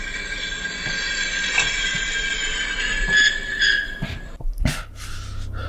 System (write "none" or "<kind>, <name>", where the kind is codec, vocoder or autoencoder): none